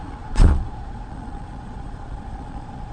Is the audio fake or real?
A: fake